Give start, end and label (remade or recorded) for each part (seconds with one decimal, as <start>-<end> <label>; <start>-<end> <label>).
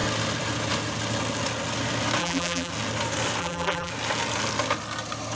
0.0-2.2 recorded; 2.2-2.7 remade; 2.7-3.4 recorded; 3.4-3.9 remade; 3.9-5.4 recorded